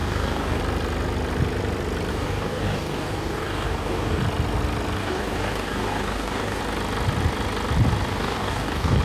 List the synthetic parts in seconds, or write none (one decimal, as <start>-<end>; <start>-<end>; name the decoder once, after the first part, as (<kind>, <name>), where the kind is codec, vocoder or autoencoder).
0.0-0.6 (codec, DAC); 2.1-4.2; 5.0-6.6; 8.1-9.0